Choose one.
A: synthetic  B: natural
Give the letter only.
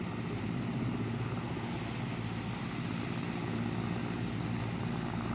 B